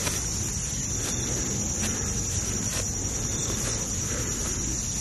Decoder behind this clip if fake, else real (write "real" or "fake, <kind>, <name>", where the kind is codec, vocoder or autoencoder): real